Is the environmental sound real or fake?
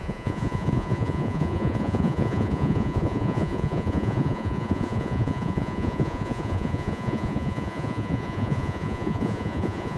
fake